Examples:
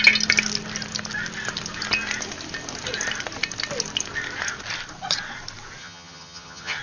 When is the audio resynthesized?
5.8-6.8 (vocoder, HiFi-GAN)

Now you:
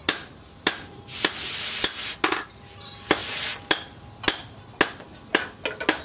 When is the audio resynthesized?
none

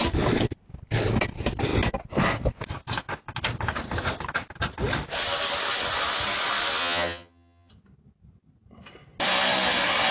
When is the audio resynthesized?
6.8-7.7 (vocoder, HiFi-GAN)

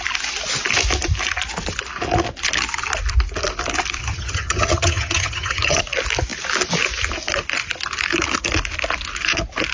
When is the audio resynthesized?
4.0-5.8 (vocoder, HiFi-GAN)

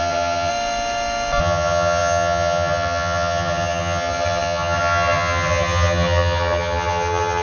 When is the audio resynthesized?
0.0-0.5 (vocoder, HiFi-GAN); 1.4-7.4

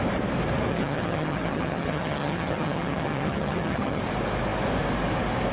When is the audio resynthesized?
0.7-4.0 (vocoder, HiFi-GAN)